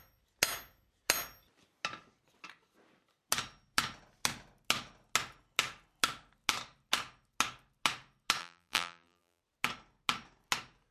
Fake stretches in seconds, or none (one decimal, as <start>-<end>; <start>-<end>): 8.4-9.4